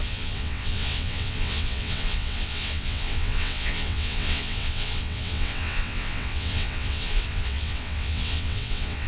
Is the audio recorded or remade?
remade